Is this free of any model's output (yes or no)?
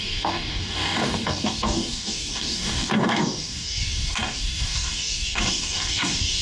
no